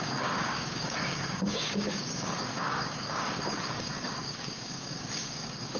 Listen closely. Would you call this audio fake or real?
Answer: fake